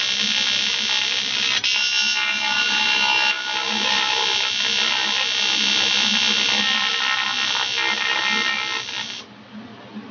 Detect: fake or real real